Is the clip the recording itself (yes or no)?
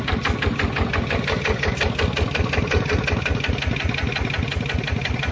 yes